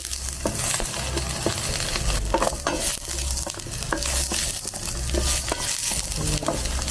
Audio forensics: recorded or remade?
recorded